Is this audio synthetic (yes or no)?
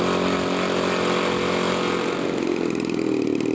no